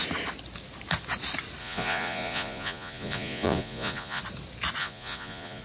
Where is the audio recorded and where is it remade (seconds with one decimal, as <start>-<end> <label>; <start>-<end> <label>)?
0.0-1.6 recorded; 1.6-4.2 remade; 4.2-4.8 recorded; 4.8-5.6 remade